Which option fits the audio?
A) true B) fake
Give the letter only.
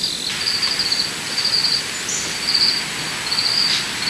A